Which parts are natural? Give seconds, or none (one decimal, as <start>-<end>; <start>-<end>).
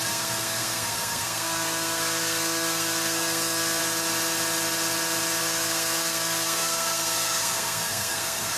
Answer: 3.8-5.4